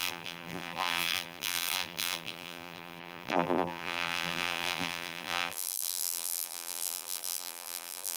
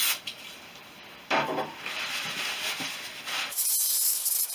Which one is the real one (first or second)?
second